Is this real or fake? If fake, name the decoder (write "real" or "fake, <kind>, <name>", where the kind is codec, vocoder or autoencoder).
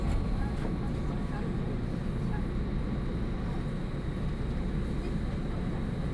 real